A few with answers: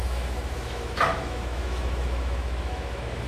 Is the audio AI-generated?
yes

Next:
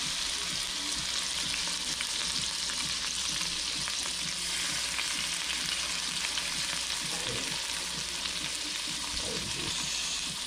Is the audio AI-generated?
no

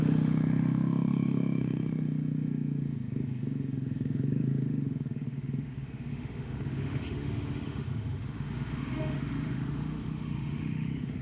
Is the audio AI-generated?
yes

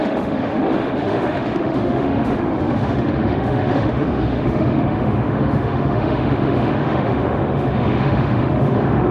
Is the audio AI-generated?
yes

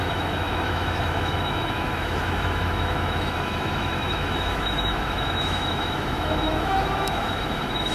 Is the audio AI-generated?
yes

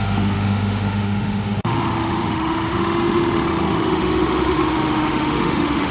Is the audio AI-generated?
yes